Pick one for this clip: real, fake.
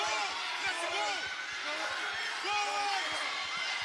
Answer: real